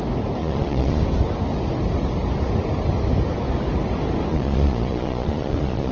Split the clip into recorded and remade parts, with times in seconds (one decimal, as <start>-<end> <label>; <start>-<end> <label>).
0.0-0.4 recorded; 0.4-1.0 remade; 1.0-4.3 recorded; 4.3-5.9 remade